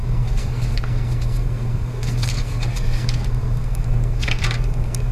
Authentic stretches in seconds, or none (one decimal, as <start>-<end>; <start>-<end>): none